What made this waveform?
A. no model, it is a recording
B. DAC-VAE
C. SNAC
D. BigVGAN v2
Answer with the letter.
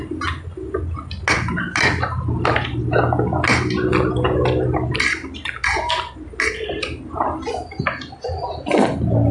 A